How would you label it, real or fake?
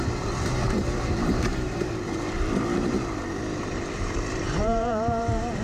fake